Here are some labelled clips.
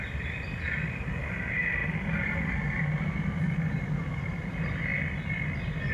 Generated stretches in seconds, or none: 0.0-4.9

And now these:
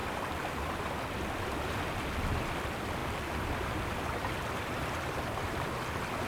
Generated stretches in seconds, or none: 0.0-0.8; 3.0-5.7

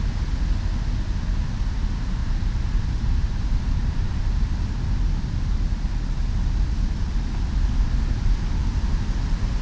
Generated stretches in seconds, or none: 2.2-4.2

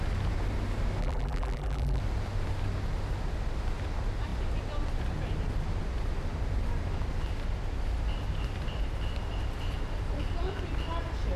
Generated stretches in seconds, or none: 1.0-2.0

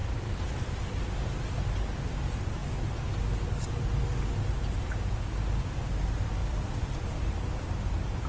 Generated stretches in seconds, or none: 6.4-7.6

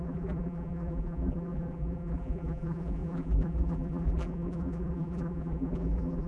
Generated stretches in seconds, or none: 0.0-6.3

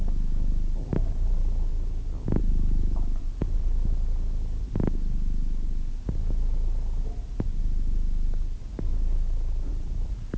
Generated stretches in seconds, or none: 0.0-1.7; 2.4-3.4; 7.6-8.9; 9.7-10.4

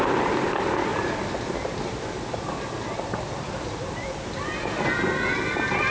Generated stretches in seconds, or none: 0.9-4.4